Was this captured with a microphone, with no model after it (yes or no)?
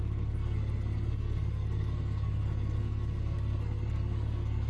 no